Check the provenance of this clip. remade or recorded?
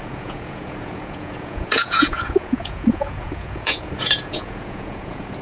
remade